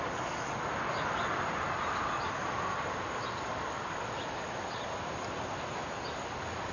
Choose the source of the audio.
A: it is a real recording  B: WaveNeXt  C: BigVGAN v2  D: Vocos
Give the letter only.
A